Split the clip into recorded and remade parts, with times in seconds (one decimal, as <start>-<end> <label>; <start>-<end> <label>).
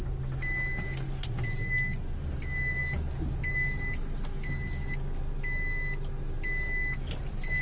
0.0-7.6 recorded